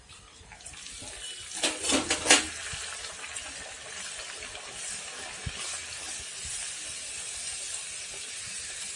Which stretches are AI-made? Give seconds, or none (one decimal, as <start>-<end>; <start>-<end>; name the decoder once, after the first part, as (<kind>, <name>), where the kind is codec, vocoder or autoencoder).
none